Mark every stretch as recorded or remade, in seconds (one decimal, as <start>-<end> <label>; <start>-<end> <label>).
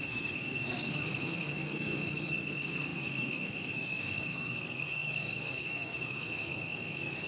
0.0-7.3 remade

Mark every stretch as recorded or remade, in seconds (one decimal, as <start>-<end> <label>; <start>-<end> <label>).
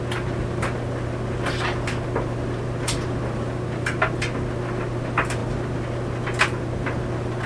0.0-7.5 recorded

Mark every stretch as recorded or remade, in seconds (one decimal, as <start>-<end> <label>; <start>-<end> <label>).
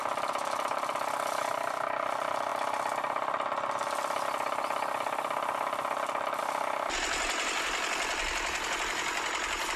0.0-9.8 recorded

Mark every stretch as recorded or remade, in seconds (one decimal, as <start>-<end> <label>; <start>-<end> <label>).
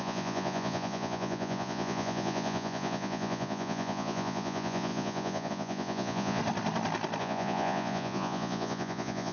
0.0-6.4 remade; 6.4-7.2 recorded; 7.2-9.3 remade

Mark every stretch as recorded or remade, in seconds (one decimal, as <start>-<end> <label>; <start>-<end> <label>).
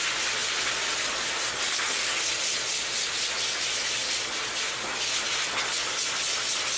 0.0-6.8 recorded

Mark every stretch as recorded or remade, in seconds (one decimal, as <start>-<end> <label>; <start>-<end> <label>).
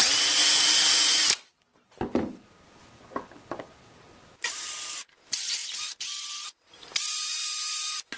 0.0-8.2 recorded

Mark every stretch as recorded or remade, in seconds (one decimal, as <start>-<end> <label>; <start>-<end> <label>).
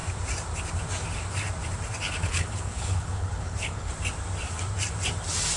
0.0-2.2 recorded; 2.2-3.9 remade; 3.9-5.6 recorded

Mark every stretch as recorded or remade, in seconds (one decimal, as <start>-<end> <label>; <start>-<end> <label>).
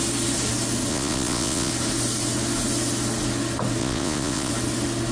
0.0-0.9 recorded; 0.9-1.7 remade; 1.7-3.8 recorded; 3.8-4.5 remade; 4.5-5.1 recorded